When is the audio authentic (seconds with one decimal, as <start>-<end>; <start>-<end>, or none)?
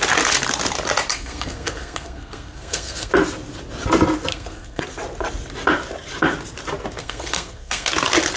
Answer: 0.0-1.1; 3.1-4.3; 4.8-7.0; 7.9-8.4